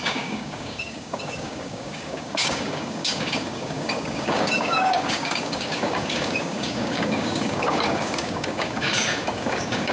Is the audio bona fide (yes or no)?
no